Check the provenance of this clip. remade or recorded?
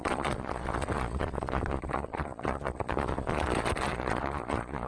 remade